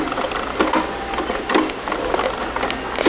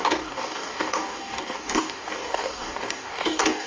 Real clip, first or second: first